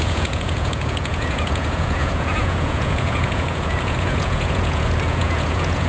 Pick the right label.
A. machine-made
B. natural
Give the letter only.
A